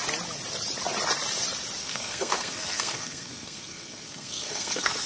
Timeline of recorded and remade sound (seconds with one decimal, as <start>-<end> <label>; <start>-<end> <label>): 0.0-1.8 recorded; 1.8-5.1 remade